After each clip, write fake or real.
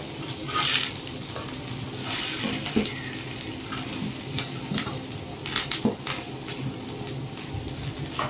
real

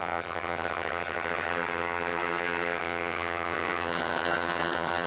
fake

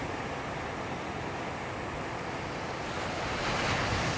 real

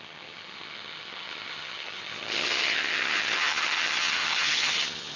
fake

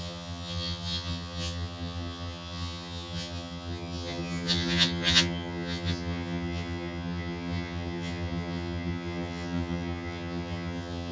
fake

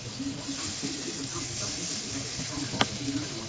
real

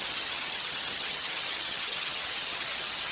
fake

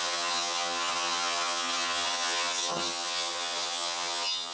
fake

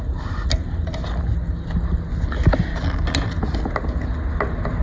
real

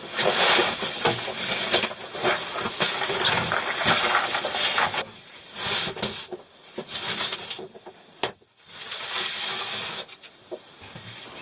real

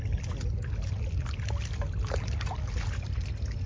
real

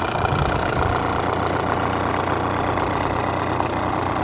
real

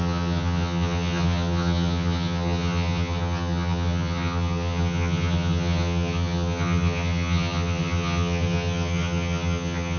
fake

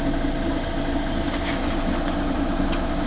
real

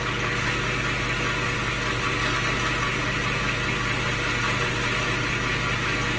real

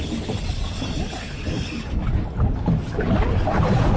real